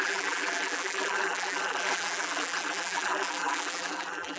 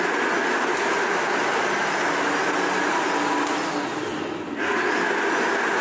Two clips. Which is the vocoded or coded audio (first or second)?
first